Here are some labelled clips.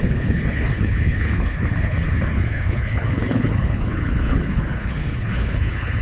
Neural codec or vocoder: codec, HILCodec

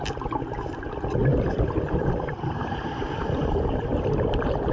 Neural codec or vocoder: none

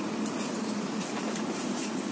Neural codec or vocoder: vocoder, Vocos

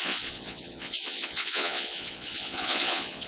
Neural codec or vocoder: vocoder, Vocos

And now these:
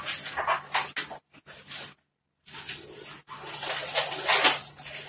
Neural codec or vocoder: none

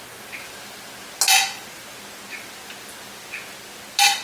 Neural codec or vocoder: none